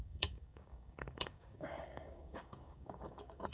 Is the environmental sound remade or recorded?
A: remade